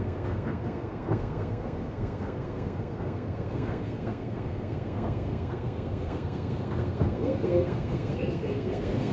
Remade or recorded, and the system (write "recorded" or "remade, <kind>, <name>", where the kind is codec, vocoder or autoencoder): remade, codec, SNAC